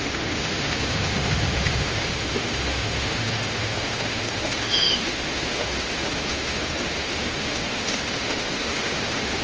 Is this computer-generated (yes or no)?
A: yes